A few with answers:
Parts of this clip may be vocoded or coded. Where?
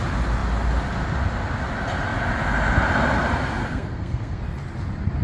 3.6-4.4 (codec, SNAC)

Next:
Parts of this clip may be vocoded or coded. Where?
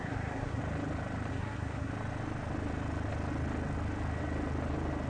0.0-0.6 (codec, SNAC); 1.3-1.9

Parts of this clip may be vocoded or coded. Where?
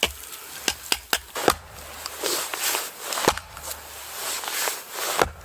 none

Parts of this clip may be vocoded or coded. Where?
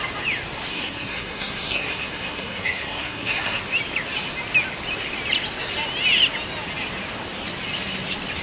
0.7-3.6 (codec, SNAC)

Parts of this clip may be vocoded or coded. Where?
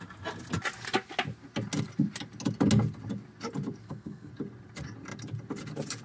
3.8-4.3 (codec, SNAC)